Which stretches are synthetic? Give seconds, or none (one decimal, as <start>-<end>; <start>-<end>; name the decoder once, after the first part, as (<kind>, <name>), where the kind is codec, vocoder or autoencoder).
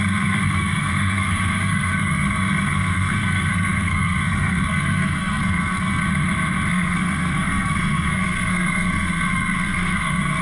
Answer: 0.0-6.0 (codec, SNAC); 6.7-10.4